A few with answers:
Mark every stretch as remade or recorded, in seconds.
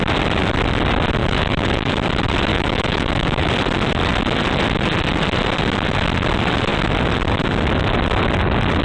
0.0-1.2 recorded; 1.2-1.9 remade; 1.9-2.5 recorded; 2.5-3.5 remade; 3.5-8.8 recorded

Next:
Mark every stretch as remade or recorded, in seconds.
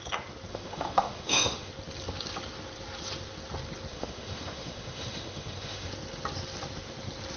0.0-0.5 recorded; 0.5-1.7 remade; 1.7-3.9 recorded; 3.9-5.9 remade; 5.9-7.4 recorded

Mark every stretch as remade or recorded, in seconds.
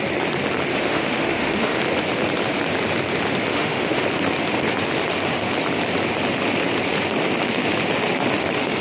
0.0-0.7 recorded; 0.7-1.8 remade; 1.8-3.5 recorded; 3.5-4.0 remade; 4.0-8.8 recorded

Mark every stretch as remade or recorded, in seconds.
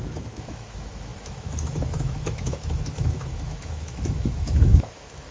0.0-5.3 remade